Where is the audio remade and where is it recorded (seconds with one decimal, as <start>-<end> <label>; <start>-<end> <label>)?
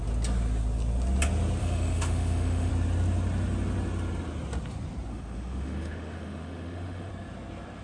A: 0.0-1.6 recorded; 1.6-2.7 remade; 2.7-5.1 recorded; 5.1-7.1 remade; 7.1-7.8 recorded